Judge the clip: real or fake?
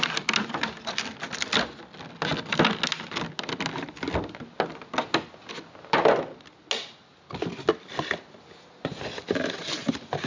real